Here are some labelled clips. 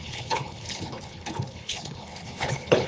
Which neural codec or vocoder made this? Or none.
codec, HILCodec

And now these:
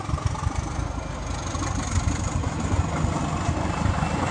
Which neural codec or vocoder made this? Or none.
none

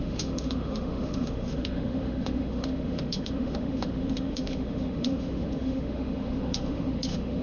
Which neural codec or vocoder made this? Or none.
autoencoder, DAC-VAE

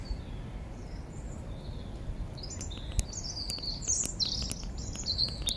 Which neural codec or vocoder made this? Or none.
none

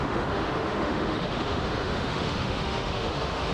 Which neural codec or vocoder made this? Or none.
autoencoder, DAC-VAE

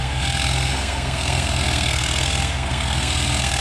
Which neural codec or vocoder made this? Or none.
codec, SNAC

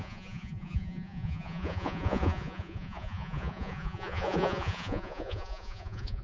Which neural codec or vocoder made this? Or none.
vocoder, Vocos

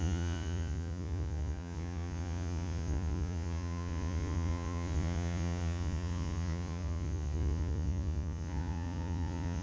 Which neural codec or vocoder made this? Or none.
vocoder, Vocos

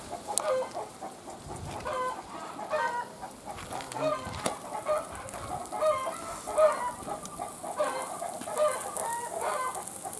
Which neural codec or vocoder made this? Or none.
none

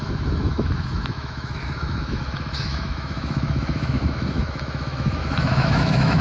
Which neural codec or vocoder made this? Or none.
autoencoder, DAC-VAE